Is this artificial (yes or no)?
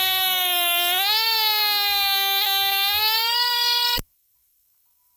yes